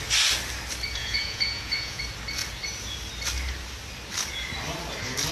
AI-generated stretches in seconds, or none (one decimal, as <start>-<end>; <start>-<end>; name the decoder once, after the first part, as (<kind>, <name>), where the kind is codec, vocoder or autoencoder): 1.0-2.0 (vocoder, Vocos)